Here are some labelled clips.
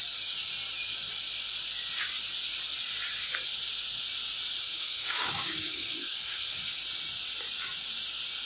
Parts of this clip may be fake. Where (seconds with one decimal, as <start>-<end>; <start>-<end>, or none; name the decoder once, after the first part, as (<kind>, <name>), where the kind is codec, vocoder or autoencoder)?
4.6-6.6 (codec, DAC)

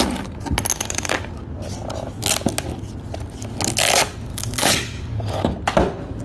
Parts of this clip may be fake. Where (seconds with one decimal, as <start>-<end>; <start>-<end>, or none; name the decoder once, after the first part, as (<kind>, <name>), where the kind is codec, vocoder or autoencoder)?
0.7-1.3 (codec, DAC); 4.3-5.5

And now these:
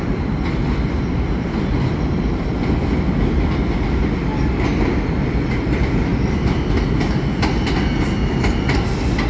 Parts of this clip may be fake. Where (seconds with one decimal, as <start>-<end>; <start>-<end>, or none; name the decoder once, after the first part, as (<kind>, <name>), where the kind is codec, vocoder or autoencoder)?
none